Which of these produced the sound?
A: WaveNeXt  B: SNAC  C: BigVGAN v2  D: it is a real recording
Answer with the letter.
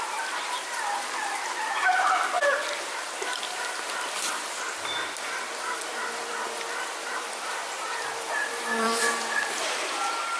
C